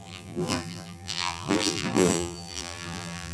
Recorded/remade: remade